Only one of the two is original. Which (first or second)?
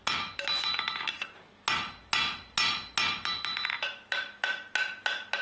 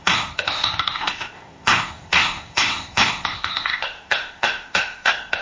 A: first